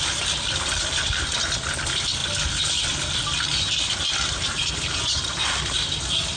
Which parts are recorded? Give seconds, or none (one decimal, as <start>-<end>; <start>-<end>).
0.0-6.4